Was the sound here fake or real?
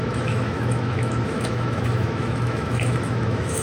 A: fake